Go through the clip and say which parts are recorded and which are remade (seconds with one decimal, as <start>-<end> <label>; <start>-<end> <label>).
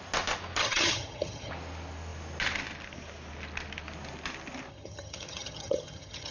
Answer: 0.0-0.6 recorded; 0.6-1.5 remade; 1.5-4.7 recorded; 4.7-6.3 remade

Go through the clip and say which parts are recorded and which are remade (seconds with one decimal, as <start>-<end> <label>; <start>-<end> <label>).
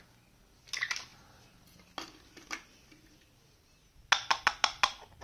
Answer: 0.0-5.2 recorded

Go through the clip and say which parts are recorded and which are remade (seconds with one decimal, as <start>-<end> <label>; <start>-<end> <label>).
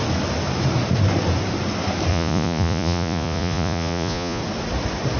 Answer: 0.0-2.1 recorded; 2.1-4.4 remade; 4.4-5.2 recorded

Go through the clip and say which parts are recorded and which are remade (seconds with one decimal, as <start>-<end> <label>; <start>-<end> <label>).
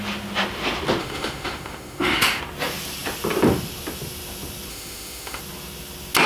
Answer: 0.0-1.0 recorded; 1.0-2.4 remade; 2.4-4.7 recorded; 4.7-5.4 remade; 5.4-6.3 recorded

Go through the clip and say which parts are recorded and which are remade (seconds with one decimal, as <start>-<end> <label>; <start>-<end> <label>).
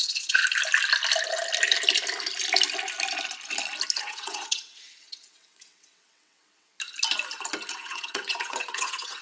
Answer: 0.0-0.4 remade; 0.4-4.0 recorded; 4.0-6.7 remade; 6.7-7.7 recorded; 7.7-9.2 remade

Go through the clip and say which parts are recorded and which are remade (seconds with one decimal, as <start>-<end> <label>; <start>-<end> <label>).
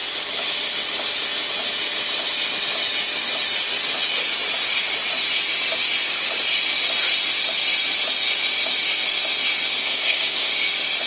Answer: 0.0-9.8 recorded; 9.8-10.5 remade; 10.5-11.1 recorded